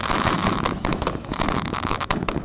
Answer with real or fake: fake